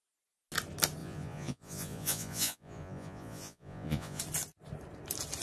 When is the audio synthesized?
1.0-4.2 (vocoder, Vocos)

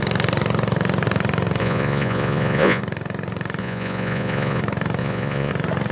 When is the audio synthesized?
1.6-2.8 (vocoder, Vocos); 3.6-4.6; 5.0-5.5

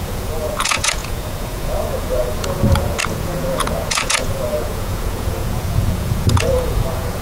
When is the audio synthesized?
0.0-7.2 (vocoder, Vocos)

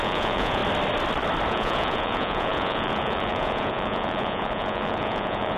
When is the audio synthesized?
0.0-0.6 (vocoder, Vocos); 1.5-5.6